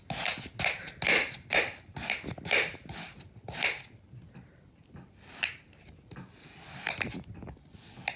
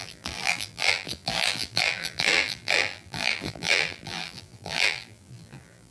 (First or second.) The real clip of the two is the first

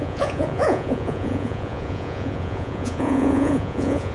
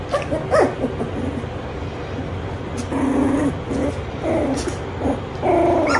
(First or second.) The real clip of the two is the second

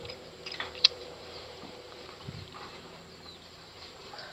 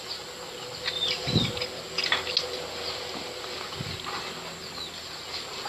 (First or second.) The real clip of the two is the second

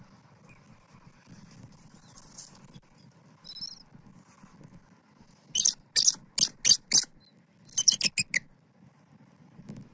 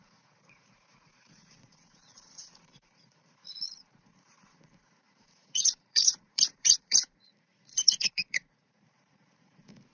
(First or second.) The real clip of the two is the first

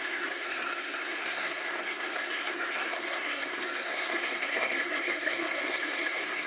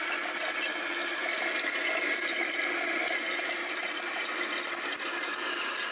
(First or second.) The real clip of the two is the second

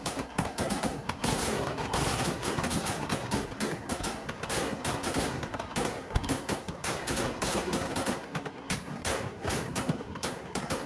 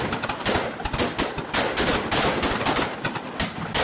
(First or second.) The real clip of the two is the second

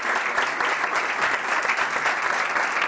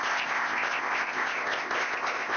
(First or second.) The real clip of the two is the first